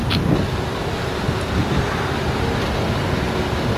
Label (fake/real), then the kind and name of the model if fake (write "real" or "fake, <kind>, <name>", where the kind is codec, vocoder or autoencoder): real